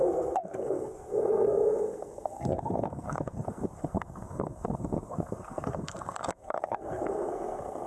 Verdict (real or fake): fake